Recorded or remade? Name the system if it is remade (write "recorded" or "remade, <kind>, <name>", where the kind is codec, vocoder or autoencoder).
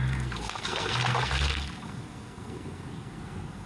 remade, codec, SNAC